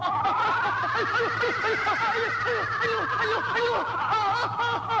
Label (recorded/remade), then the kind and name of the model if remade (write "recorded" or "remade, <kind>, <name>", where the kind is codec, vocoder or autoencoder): recorded